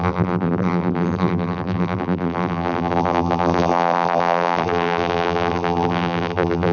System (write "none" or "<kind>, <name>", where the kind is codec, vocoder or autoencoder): vocoder, BigVGAN v2